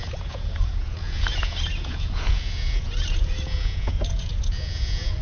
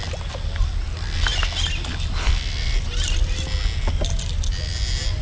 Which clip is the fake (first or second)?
first